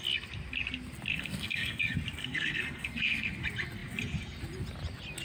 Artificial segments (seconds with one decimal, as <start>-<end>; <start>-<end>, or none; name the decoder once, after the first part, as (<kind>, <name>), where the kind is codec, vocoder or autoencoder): 1.1-1.8 (codec, SNAC); 2.2-3.3